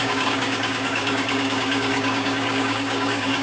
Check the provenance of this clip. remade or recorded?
remade